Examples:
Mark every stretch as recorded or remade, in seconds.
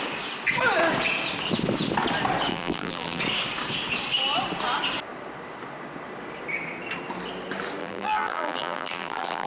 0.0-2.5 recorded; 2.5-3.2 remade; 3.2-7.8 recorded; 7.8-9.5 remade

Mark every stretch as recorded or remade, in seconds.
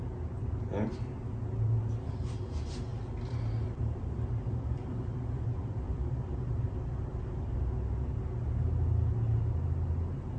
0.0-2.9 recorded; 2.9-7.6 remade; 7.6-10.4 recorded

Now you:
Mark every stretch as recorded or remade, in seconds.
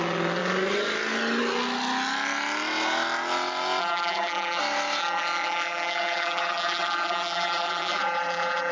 0.0-3.8 recorded; 3.8-4.6 remade; 4.6-5.0 recorded; 5.0-8.7 remade